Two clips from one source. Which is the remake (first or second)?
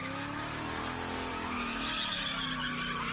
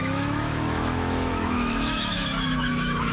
second